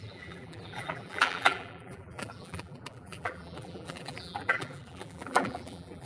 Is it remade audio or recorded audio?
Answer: remade